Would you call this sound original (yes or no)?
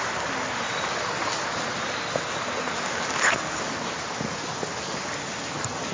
yes